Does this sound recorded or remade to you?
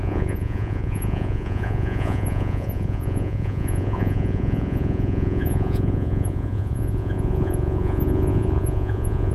remade